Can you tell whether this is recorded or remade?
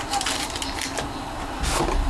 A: recorded